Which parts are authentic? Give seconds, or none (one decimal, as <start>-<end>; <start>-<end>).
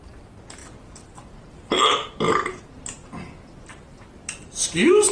0.0-5.1